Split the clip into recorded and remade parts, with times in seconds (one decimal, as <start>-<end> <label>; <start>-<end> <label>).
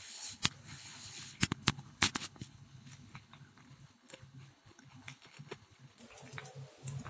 0.0-6.0 remade; 6.0-7.1 recorded